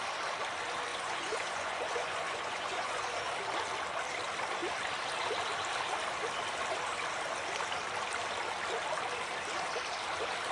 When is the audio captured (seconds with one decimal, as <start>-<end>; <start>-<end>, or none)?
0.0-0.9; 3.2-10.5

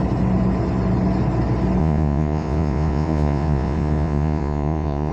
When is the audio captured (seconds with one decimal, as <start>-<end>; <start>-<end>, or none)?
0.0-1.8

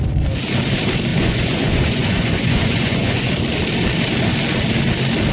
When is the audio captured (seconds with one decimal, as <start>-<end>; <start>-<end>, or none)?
0.0-1.1; 3.3-5.3